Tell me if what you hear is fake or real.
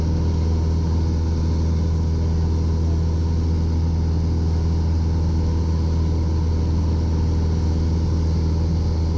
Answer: real